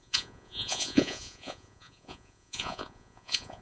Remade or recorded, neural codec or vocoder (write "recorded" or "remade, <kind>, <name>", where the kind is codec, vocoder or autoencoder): remade, vocoder, Vocos